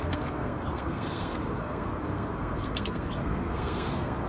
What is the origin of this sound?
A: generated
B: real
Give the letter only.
A